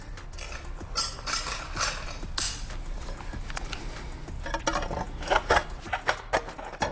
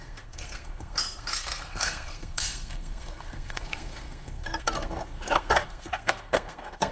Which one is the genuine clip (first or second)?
first